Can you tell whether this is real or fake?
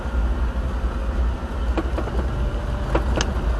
real